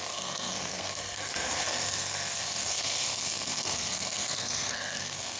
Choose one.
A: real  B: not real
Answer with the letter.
B